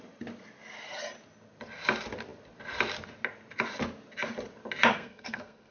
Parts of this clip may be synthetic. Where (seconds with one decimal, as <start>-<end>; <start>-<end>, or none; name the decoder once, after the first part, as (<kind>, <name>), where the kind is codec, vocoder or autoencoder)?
4.9-5.7 (codec, SNAC)